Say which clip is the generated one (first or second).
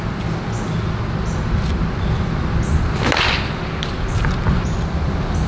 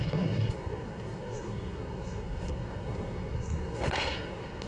second